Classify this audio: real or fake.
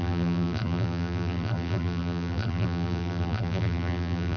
fake